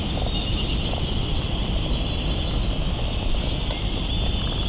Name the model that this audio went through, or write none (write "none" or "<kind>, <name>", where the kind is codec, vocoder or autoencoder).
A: none